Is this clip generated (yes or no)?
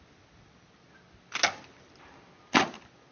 no